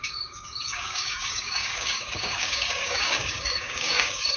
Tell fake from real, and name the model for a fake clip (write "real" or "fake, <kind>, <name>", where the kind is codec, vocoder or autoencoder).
fake, codec, DAC